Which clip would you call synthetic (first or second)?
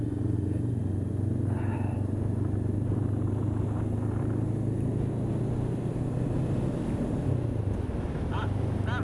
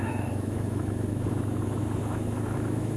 second